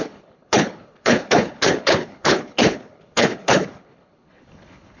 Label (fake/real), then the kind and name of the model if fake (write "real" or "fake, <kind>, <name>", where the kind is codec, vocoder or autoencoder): fake, codec, HILCodec